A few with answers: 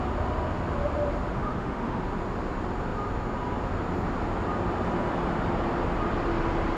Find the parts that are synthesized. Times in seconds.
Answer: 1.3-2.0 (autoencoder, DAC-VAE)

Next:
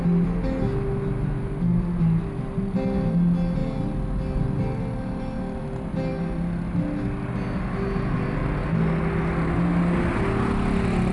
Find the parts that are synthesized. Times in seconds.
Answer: none

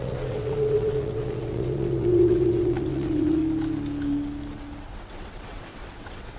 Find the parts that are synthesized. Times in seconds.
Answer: 0.0-3.4 (vocoder, WaveNeXt); 4.9-6.4